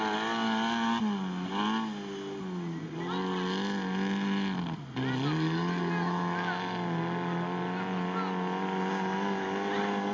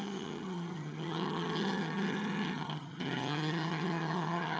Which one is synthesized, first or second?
second